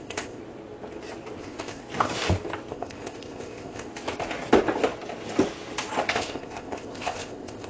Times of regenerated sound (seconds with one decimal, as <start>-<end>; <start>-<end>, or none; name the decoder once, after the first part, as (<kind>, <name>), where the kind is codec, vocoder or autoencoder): 0.0-0.4 (codec, ZipCodec); 1.4-1.8; 2.7-3.9; 6.1-7.7